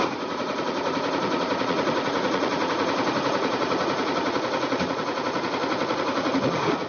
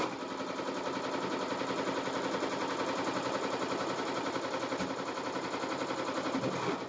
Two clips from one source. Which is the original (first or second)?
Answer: second